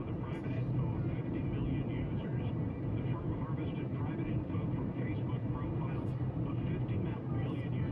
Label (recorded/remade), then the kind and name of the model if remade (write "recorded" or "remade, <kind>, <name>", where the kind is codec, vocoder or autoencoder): recorded